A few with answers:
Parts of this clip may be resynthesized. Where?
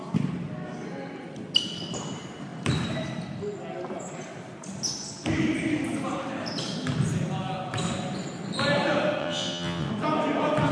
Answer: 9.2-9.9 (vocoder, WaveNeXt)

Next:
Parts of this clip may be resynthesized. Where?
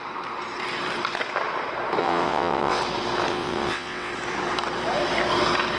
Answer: 2.0-2.8 (vocoder, WaveNeXt); 3.3-4.1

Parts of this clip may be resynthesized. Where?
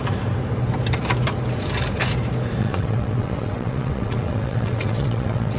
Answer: 2.6-5.6 (vocoder, WaveNeXt)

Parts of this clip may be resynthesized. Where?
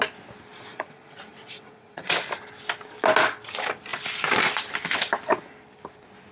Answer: 0.7-2.1 (vocoder, WaveNeXt)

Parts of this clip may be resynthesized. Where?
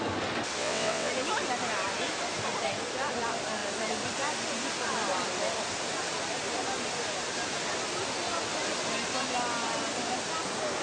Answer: 0.6-1.1 (vocoder, WaveNeXt)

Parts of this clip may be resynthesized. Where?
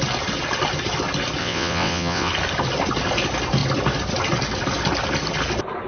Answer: 1.4-2.3 (vocoder, WaveNeXt)